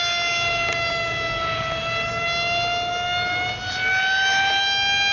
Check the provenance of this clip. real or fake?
real